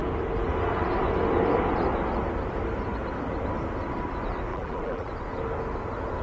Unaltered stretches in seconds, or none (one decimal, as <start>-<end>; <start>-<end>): 0.0-4.5; 5.1-6.2